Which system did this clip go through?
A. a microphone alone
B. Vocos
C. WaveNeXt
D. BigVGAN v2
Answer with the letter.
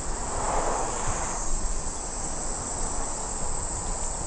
A